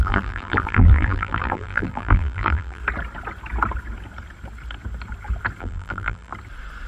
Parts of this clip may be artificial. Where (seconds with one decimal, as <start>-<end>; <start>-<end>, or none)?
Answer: 0.0-2.8; 5.6-6.3